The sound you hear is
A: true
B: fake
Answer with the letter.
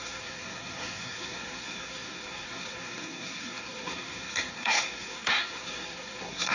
B